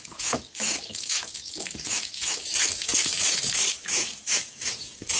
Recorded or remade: remade